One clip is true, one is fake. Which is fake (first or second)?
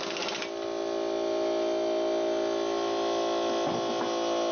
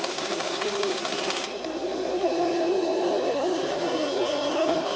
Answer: second